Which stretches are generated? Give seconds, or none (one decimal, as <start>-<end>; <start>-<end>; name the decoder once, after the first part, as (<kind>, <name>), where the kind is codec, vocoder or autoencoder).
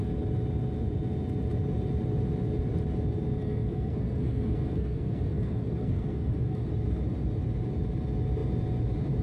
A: 3.4-6.7 (codec, SNAC)